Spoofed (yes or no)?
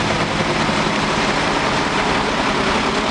no